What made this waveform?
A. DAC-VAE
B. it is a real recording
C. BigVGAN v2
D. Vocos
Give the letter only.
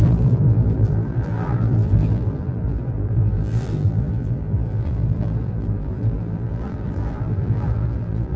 C